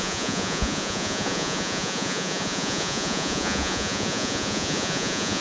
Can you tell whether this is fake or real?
fake